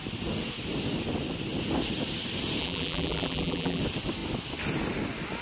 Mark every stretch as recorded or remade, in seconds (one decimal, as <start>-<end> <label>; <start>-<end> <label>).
0.0-2.6 recorded; 2.6-3.8 remade; 3.8-5.4 recorded